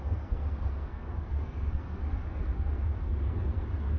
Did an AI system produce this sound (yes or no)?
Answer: yes